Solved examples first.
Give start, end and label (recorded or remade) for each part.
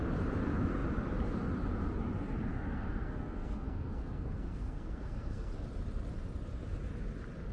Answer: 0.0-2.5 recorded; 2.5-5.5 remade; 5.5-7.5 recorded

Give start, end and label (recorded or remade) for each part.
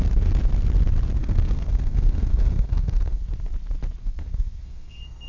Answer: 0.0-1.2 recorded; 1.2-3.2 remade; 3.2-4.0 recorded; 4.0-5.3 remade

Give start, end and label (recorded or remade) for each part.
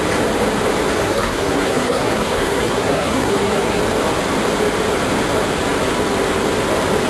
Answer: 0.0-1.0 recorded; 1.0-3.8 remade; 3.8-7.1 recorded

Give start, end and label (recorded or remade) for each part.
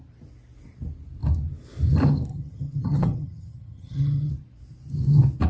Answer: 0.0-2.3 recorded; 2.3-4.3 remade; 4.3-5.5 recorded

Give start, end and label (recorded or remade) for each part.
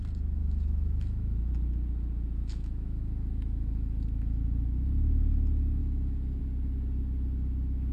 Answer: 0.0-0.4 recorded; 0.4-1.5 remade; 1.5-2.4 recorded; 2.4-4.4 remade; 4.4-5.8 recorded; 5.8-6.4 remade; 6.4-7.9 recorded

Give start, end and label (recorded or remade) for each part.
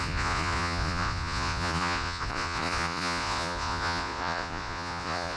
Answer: 0.0-5.4 remade